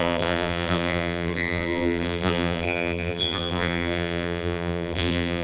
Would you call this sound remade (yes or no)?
yes